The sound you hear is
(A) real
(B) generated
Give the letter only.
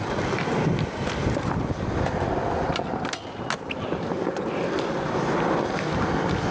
A